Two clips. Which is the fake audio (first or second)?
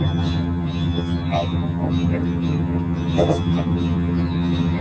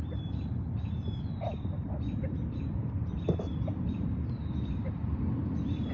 first